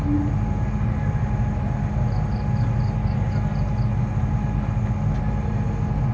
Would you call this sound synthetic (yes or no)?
no